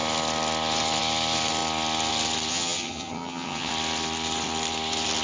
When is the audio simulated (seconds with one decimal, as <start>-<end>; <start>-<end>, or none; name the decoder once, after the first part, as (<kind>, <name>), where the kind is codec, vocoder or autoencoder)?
2.5-3.7 (vocoder, HiFi-GAN)